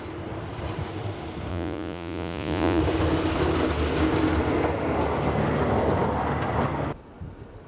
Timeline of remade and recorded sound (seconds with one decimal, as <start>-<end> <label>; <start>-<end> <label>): 0.0-1.5 recorded; 1.5-2.8 remade; 2.8-7.7 recorded